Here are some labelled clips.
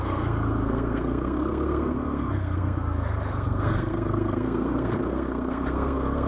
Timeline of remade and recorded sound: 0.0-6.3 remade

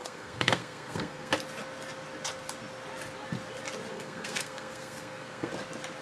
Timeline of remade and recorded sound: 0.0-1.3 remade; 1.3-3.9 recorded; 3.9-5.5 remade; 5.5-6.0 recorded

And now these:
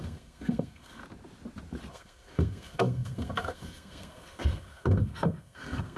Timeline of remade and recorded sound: 0.0-1.0 remade; 1.0-1.9 recorded; 1.9-6.0 remade

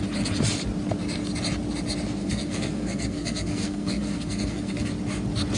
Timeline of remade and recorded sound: 0.0-2.2 recorded; 2.2-4.9 remade; 4.9-5.6 recorded

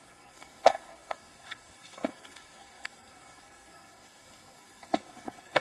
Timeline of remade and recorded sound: 0.0-5.6 remade

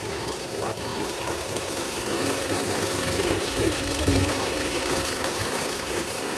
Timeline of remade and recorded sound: 0.0-6.4 remade

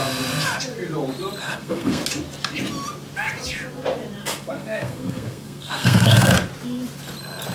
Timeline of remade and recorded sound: 0.0-1.4 recorded; 1.4-2.0 remade; 2.0-4.2 recorded; 4.2-6.3 remade; 6.3-7.5 recorded

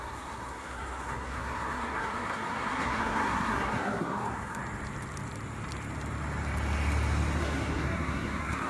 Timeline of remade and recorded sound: 0.0-4.6 remade; 4.6-7.4 recorded; 7.4-8.7 remade